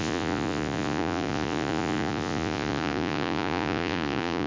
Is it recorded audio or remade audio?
remade